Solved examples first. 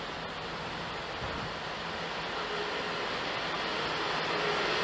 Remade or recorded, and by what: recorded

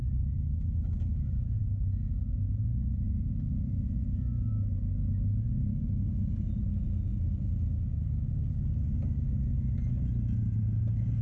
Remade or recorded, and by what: recorded